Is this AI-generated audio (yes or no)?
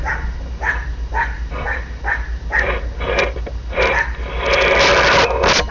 no